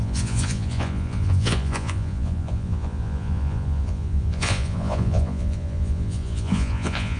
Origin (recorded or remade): remade